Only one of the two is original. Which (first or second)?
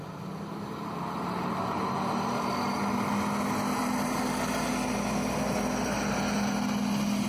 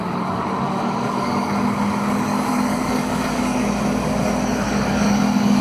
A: first